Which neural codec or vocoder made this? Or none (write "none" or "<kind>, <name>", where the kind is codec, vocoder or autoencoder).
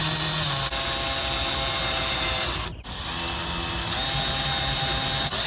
none